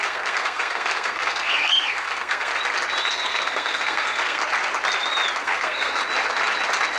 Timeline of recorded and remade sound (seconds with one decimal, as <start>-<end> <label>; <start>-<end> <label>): 0.0-2.5 remade; 2.5-3.1 recorded; 3.1-4.4 remade; 4.4-5.4 recorded; 5.4-6.0 remade; 6.0-7.0 recorded